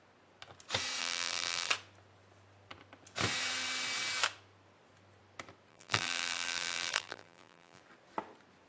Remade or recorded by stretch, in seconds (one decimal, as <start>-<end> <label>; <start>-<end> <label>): 0.0-1.0 recorded; 1.0-1.7 remade; 1.7-5.7 recorded; 5.7-7.8 remade; 7.8-8.7 recorded